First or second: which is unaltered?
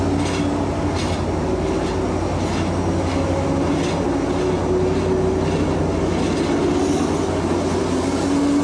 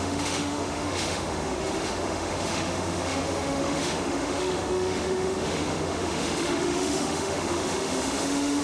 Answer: first